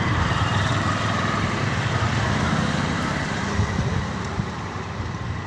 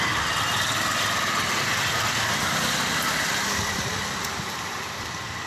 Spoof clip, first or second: first